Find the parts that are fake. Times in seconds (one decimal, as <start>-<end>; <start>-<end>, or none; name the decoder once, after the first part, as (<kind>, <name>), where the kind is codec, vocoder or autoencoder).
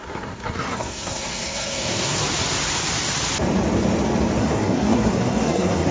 0.0-2.2 (codec, SNAC); 4.4-5.9